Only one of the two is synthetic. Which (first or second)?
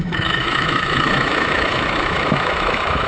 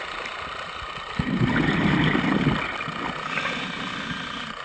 first